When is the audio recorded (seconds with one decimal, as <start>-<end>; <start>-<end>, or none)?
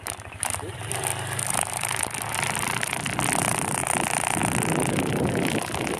1.1-1.7